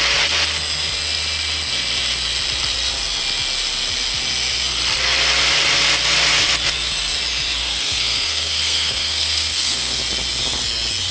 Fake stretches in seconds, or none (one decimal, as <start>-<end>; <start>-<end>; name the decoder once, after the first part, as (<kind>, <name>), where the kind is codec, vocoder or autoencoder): 7.6-10.0 (codec, SNAC)